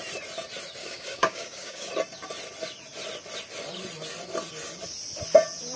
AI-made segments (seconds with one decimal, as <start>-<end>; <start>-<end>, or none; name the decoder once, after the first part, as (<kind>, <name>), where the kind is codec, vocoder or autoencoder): 0.8-1.9 (codec, DAC)